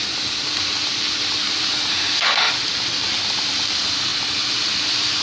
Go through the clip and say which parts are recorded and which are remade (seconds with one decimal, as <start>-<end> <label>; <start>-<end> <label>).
0.0-1.9 recorded; 1.9-2.5 remade; 2.5-5.2 recorded